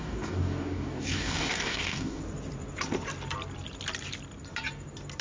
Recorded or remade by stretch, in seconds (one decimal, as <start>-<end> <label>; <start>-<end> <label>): 0.0-2.2 remade; 2.2-5.2 recorded